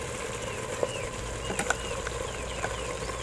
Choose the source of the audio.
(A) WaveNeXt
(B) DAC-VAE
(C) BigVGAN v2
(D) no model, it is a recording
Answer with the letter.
D